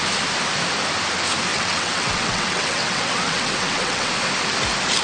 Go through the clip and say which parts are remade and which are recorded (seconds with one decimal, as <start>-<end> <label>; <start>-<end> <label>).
0.0-1.5 recorded; 1.5-4.1 remade; 4.1-5.0 recorded